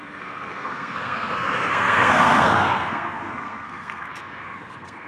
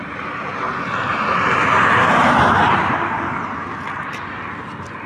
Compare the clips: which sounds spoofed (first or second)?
first